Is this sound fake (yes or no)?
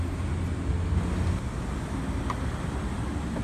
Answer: no